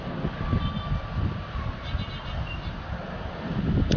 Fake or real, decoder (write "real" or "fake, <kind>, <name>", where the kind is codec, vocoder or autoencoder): real